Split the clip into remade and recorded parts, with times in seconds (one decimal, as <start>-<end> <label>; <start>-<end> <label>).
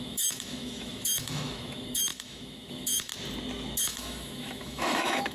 0.0-3.1 remade; 3.1-3.8 recorded; 3.8-5.3 remade